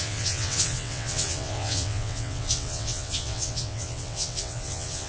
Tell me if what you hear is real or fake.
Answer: fake